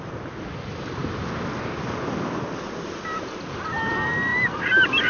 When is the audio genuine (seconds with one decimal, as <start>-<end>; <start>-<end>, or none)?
0.0-4.3